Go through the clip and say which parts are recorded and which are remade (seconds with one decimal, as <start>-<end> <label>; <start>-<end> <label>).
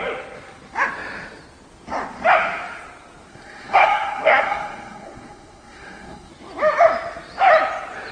0.0-3.3 recorded; 3.3-6.3 remade; 6.3-8.1 recorded